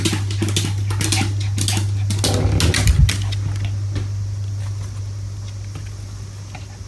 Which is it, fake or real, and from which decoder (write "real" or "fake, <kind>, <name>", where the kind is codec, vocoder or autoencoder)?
real